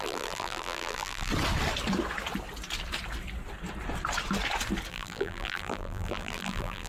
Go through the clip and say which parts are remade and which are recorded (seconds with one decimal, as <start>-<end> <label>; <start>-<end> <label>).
0.0-1.3 remade; 1.3-4.9 recorded; 4.9-6.9 remade